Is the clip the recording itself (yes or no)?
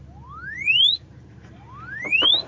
yes